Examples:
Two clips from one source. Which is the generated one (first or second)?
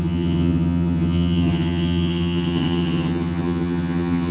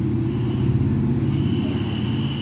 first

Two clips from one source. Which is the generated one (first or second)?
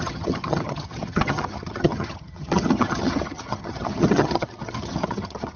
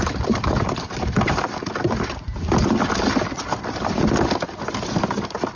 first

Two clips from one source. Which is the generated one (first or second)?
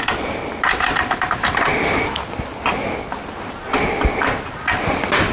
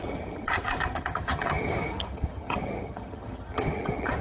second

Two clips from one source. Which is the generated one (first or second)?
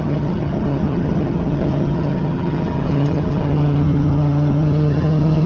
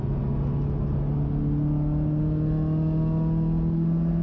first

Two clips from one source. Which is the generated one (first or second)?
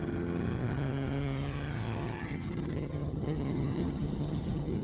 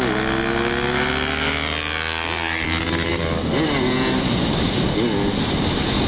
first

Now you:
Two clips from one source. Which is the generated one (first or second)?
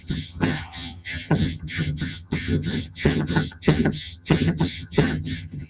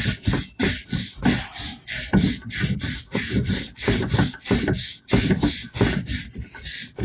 first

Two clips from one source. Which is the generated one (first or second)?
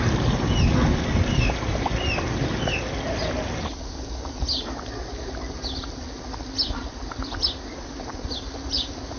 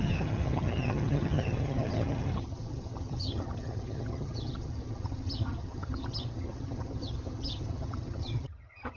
second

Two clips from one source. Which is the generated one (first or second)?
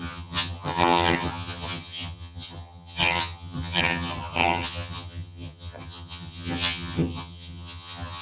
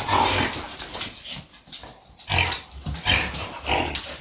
first